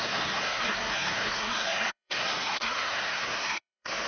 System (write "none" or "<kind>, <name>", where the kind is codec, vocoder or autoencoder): codec, SNAC